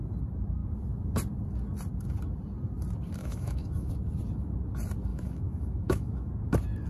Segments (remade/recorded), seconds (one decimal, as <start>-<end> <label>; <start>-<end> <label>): 0.0-3.2 recorded; 3.2-3.9 remade; 3.9-5.1 recorded; 5.1-6.3 remade; 6.3-6.9 recorded